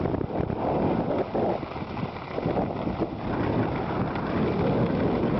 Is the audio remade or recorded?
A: recorded